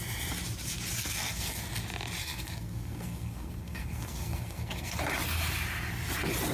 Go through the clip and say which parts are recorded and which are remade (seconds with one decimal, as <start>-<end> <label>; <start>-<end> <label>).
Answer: 0.0-1.0 recorded; 1.0-1.6 remade; 1.6-2.2 recorded; 2.2-5.0 remade; 5.0-6.5 recorded